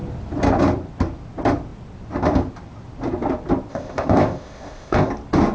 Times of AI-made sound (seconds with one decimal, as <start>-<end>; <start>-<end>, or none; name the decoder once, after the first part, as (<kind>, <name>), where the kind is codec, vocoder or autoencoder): 3.7-5.1 (codec, ZipCodec)